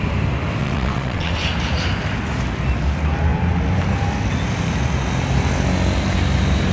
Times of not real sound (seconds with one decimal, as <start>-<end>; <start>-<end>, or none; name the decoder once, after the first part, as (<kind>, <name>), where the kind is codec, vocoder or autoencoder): 0.6-1.3 (vocoder, WaveNeXt)